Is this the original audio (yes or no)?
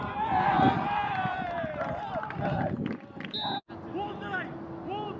yes